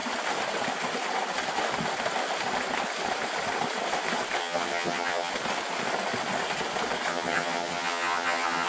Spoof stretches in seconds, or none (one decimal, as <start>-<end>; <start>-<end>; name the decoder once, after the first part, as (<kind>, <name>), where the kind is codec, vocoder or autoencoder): 4.4-5.3 (vocoder, HiFi-GAN); 7.1-8.7